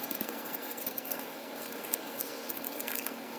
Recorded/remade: remade